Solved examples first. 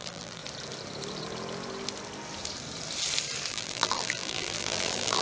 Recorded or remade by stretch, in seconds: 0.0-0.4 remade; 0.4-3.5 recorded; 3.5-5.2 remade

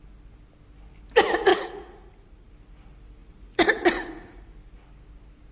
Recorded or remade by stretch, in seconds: 0.0-1.5 recorded; 1.5-2.5 remade; 2.5-3.2 recorded; 3.2-4.4 remade; 4.4-5.5 recorded

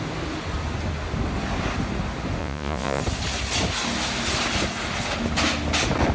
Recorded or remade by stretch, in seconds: 0.0-2.4 recorded; 2.4-3.0 remade; 3.0-6.1 recorded

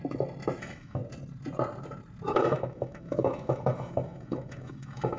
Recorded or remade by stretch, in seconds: 0.0-0.6 recorded; 0.6-1.0 remade; 1.0-2.3 recorded; 2.3-5.2 remade

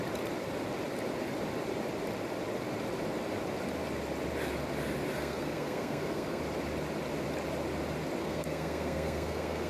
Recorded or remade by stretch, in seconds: 0.0-5.2 recorded; 5.2-6.4 remade; 6.4-8.2 recorded; 8.2-9.7 remade

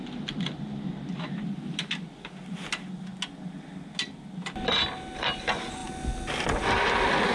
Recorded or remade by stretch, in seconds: 0.0-7.3 recorded

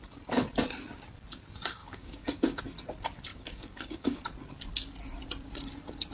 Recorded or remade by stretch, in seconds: 0.0-1.8 recorded; 1.8-2.6 remade; 2.6-3.3 recorded; 3.3-4.2 remade; 4.2-6.1 recorded

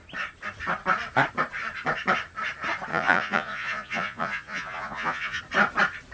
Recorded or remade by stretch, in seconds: 0.0-2.9 recorded; 2.9-5.4 remade; 5.4-6.1 recorded